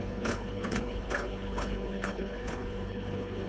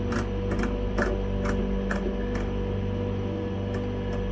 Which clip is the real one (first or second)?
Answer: second